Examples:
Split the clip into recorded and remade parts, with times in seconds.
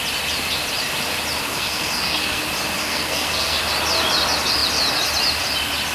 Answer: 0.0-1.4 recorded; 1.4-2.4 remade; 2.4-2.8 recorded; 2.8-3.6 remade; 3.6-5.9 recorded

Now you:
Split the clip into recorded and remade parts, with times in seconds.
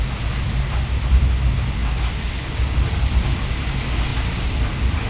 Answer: 0.0-1.8 recorded; 1.8-2.5 remade; 2.5-4.1 recorded; 4.1-5.1 remade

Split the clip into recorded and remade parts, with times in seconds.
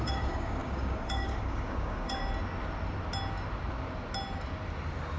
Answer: 0.0-2.2 remade; 2.2-5.2 recorded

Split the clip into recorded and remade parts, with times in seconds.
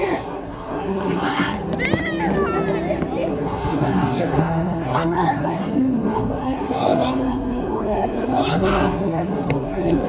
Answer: 0.0-1.6 remade; 1.6-3.3 recorded; 3.3-10.1 remade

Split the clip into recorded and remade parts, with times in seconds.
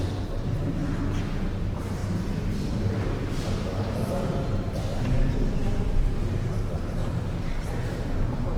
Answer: 0.0-0.8 remade; 0.8-1.6 recorded; 1.6-7.0 remade; 7.0-7.7 recorded; 7.7-8.6 remade